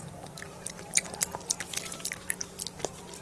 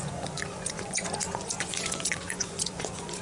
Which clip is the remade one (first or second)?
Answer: second